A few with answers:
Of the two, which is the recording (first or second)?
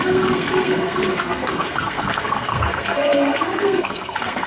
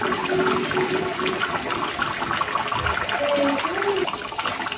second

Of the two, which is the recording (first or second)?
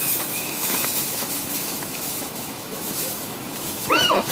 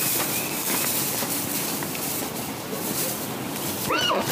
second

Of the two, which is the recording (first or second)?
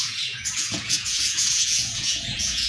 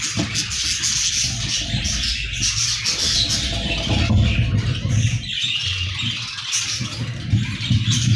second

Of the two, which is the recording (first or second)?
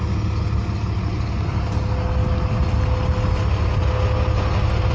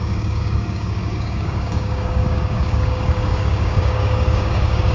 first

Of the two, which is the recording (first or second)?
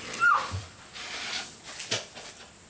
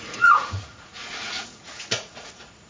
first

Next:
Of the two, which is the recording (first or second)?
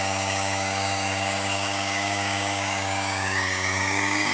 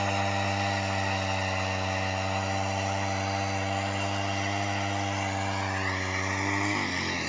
second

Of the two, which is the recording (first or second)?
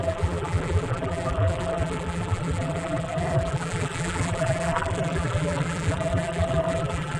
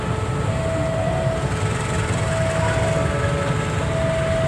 second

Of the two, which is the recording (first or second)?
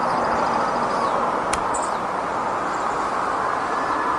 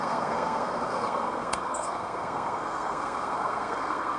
first